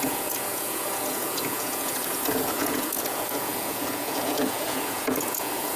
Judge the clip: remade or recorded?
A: remade